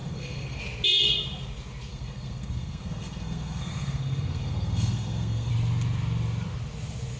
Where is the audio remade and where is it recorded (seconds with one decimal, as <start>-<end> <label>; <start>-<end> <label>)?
0.0-0.6 remade; 0.6-1.9 recorded; 1.9-5.5 remade; 5.5-7.2 recorded